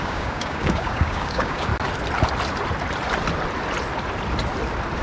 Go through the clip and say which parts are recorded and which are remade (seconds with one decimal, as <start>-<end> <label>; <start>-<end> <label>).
0.0-1.7 remade; 1.7-5.0 recorded